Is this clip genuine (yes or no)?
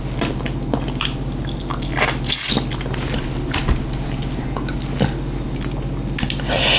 yes